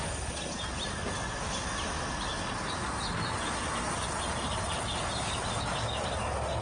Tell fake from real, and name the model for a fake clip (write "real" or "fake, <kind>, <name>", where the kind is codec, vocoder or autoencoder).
real